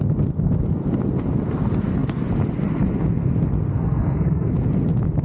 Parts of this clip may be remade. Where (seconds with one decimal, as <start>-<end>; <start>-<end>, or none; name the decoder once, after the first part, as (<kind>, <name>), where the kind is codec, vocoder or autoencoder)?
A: 3.7-4.5 (codec, SNAC)